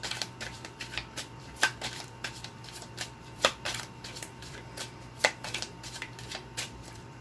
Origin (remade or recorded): remade